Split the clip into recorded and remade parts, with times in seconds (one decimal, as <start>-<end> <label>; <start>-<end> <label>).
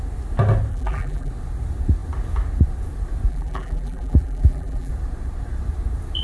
0.0-0.7 recorded; 0.7-1.3 remade; 1.3-3.3 recorded; 3.3-4.9 remade; 4.9-6.2 recorded